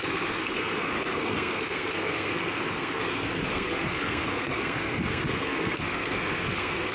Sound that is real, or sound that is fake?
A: fake